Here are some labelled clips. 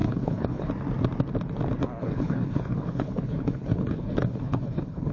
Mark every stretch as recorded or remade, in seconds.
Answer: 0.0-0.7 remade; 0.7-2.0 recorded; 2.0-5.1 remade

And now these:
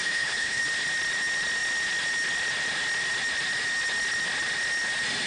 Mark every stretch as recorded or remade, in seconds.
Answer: 0.0-0.6 remade; 0.6-5.3 recorded

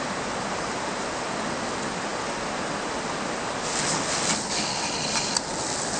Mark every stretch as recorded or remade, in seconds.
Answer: 0.0-6.0 recorded

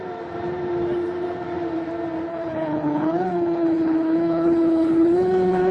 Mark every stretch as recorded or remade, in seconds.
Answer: 0.0-2.3 recorded; 2.3-5.7 remade